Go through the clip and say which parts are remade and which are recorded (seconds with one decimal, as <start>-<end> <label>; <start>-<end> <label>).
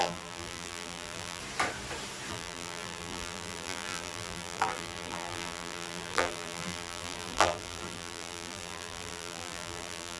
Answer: 0.0-1.4 remade; 1.4-2.3 recorded; 2.3-10.2 remade